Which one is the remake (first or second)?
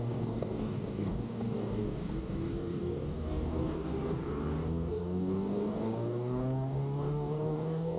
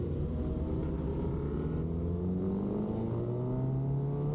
first